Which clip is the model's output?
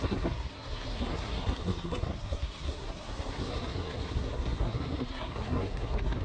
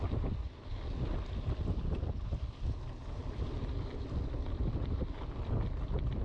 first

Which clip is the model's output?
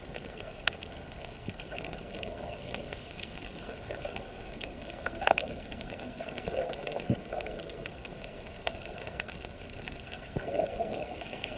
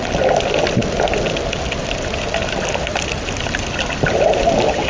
first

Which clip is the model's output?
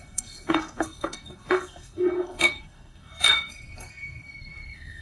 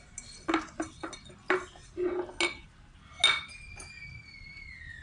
first